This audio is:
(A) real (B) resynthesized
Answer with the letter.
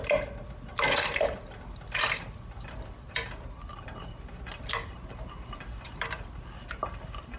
A